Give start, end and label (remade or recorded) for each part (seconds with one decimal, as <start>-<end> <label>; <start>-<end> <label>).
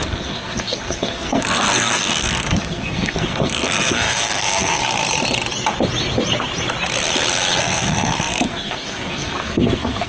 0.0-4.8 remade; 4.8-7.6 recorded; 7.6-10.1 remade